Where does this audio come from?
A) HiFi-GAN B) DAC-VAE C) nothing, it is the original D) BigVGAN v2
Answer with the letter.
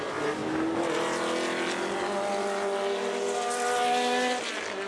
C